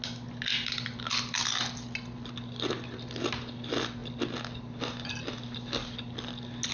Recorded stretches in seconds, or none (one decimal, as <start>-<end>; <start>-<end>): 0.0-6.7